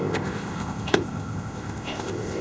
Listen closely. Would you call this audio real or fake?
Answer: fake